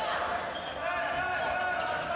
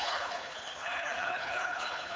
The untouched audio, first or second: first